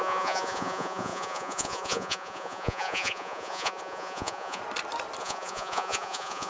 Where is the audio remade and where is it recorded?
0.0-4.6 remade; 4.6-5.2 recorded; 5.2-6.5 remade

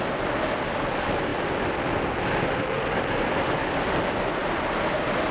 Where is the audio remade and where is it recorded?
0.0-5.3 recorded

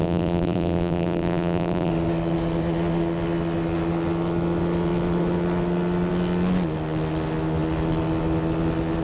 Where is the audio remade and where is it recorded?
0.0-1.9 remade; 1.9-9.0 recorded

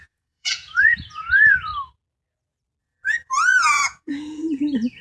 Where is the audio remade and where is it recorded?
0.0-1.7 remade; 1.7-2.8 recorded; 2.8-5.0 remade

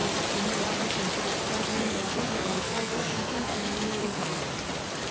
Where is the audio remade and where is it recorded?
0.0-1.7 recorded; 1.7-4.4 remade; 4.4-5.1 recorded